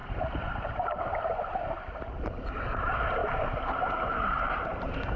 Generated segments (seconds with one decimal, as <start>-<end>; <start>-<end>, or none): 0.0-5.2